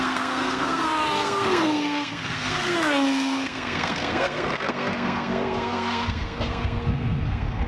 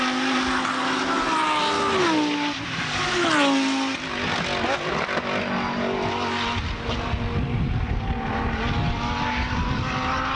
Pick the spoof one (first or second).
first